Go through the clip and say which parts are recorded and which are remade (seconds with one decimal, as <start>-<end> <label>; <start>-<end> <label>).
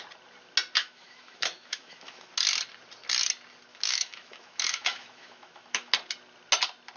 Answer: 0.0-0.8 recorded; 0.8-2.3 remade; 2.3-3.7 recorded; 3.7-5.9 remade; 5.9-7.0 recorded